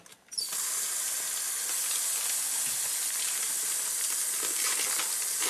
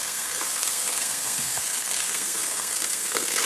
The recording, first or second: first